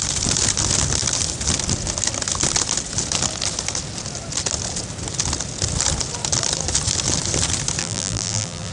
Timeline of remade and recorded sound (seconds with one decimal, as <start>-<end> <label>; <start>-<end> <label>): 0.0-7.8 recorded; 7.8-8.7 remade